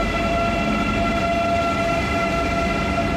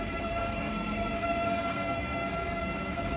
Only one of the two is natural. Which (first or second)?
first